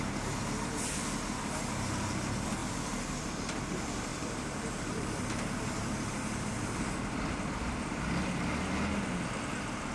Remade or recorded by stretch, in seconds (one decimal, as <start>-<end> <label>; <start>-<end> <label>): 0.0-2.6 recorded; 2.6-3.3 remade; 3.3-4.1 recorded; 4.1-7.7 remade; 7.7-9.9 recorded